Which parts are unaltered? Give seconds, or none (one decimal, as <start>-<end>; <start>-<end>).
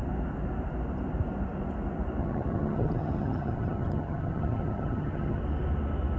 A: 0.0-2.2; 5.4-6.2